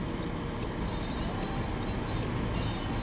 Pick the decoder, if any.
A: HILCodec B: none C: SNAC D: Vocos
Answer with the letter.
B